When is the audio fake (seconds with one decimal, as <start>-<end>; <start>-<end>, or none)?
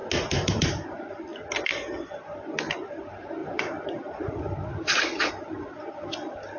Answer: 0.5-1.3; 2.9-6.6